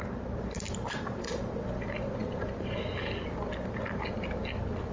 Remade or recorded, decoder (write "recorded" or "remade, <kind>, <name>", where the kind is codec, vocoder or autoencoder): recorded